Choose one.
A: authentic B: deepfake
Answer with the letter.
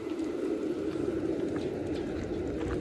A